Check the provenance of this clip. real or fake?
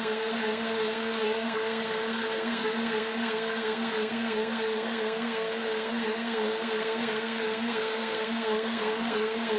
fake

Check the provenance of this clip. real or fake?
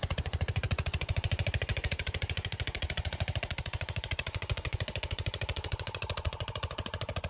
fake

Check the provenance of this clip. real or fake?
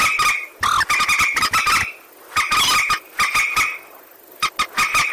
real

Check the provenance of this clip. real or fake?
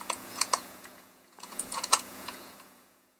fake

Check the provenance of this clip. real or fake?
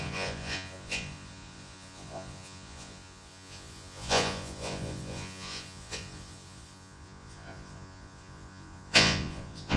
fake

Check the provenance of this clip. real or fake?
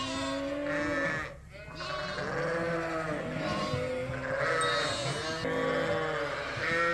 real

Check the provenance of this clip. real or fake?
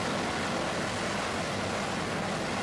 real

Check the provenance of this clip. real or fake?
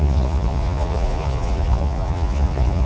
fake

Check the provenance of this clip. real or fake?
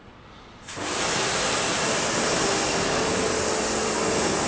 real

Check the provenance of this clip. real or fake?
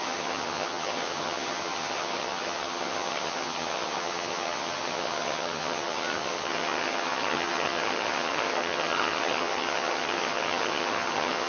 fake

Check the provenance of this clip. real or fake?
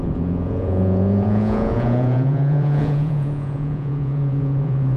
fake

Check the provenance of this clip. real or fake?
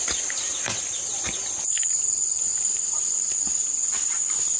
real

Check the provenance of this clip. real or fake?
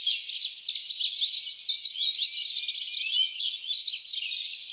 real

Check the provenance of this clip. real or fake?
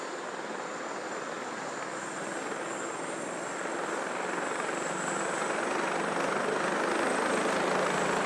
real